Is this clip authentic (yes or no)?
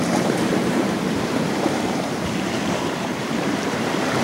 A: no